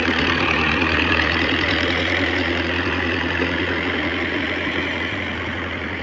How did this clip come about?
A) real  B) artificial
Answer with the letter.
B